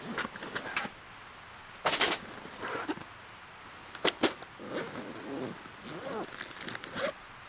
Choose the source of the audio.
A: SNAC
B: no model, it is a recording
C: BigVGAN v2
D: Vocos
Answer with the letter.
B